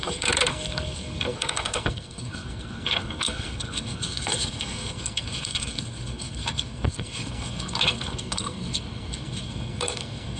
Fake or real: fake